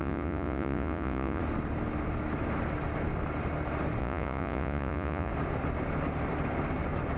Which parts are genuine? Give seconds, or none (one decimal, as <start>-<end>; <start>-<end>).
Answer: 1.4-4.0; 5.3-7.2